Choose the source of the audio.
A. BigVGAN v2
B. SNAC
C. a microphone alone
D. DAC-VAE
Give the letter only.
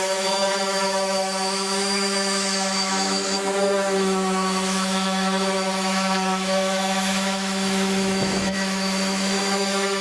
D